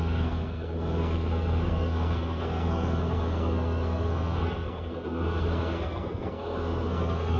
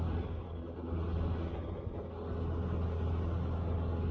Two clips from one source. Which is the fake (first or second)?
first